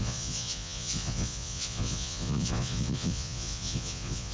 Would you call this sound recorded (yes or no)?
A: no